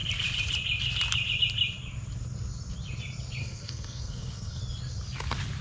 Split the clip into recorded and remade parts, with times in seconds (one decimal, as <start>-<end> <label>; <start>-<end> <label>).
0.0-3.4 recorded; 3.4-4.6 remade; 4.6-5.6 recorded